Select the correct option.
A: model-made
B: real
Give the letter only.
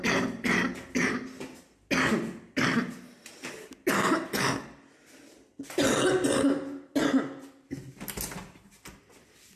B